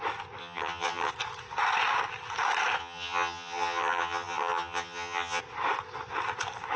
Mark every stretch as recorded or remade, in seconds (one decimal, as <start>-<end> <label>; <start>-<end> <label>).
0.0-0.4 recorded; 0.4-1.1 remade; 1.1-2.8 recorded; 2.8-5.4 remade; 5.4-6.8 recorded

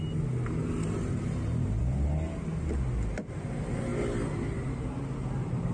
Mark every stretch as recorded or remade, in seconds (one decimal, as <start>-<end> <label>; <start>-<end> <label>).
0.0-5.7 recorded